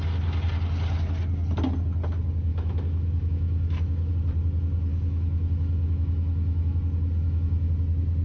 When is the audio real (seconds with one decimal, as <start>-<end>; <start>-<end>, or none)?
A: 0.0-2.5; 4.1-4.9; 6.8-7.2; 7.7-8.2